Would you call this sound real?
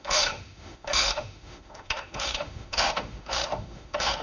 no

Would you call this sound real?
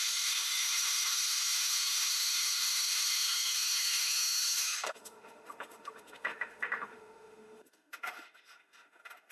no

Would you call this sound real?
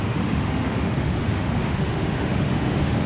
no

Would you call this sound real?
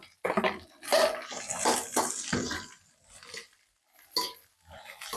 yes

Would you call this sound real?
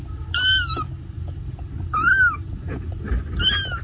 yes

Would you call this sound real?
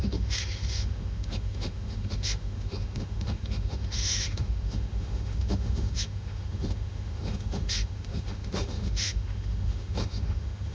no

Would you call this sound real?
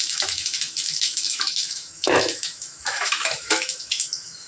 no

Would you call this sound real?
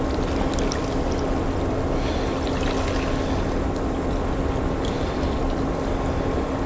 yes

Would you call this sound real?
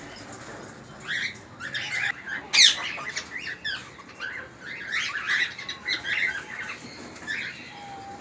yes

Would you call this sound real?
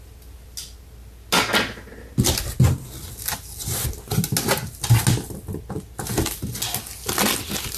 yes